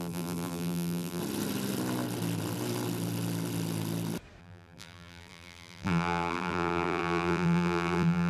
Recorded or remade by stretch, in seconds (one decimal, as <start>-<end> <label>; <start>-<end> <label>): 0.0-1.2 remade; 1.2-4.4 recorded; 4.4-8.3 remade